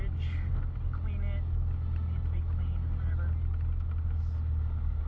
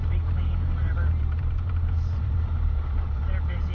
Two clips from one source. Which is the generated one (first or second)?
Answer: second